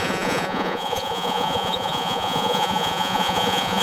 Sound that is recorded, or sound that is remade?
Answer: remade